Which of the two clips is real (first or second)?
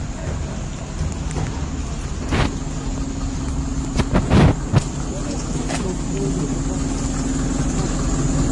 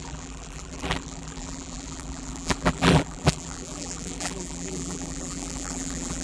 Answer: first